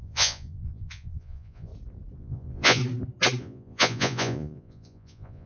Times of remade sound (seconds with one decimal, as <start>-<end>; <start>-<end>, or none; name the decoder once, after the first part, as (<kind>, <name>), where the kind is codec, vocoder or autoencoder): 0.0-1.7 (vocoder, Vocos); 2.2-2.8; 3.4-5.5